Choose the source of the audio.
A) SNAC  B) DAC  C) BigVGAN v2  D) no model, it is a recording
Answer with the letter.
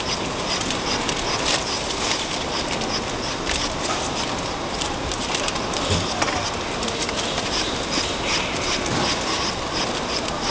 D